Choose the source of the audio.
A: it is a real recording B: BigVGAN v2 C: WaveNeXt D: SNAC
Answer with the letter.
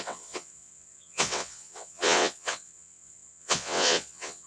C